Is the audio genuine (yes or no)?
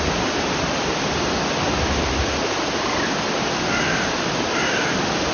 yes